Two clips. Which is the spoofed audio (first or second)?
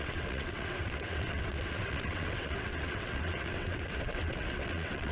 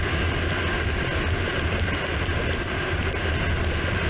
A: first